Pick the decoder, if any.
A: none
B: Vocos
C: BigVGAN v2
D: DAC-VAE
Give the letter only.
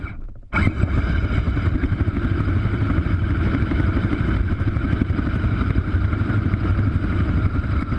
C